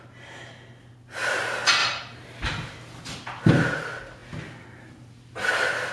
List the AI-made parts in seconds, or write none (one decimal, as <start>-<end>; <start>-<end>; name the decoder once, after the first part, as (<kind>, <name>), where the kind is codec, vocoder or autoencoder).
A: 1.8-3.5 (vocoder, BigVGAN v2)